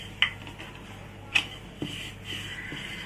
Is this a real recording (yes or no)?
yes